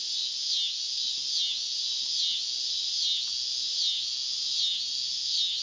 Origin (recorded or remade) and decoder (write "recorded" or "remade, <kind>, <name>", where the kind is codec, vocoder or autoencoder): recorded